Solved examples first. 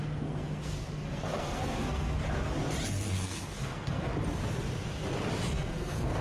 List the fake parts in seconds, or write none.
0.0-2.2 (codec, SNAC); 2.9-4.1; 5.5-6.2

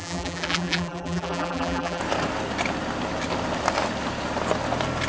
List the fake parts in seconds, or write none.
0.0-2.0 (vocoder, BigVGAN v2)

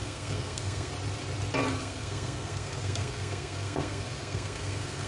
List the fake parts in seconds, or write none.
0.0-0.9 (codec, SNAC); 1.8-5.1

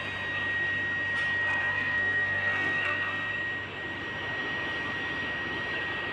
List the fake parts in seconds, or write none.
1.6-3.3 (codec, SNAC)

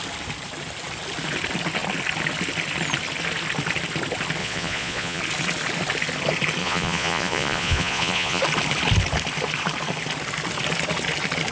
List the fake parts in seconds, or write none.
4.4-5.2 (vocoder, Vocos); 6.6-8.4

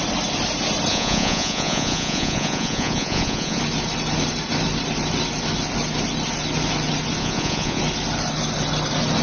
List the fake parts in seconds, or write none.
0.9-3.6 (vocoder, Vocos); 7.2-7.8

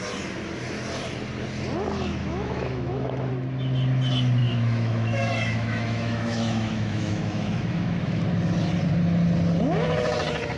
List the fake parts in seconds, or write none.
2.2-3.3 (autoencoder, DAC-VAE); 4.4-8.2

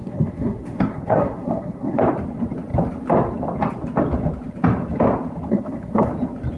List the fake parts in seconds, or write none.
0.0-2.0 (codec, SNAC); 5.5-6.1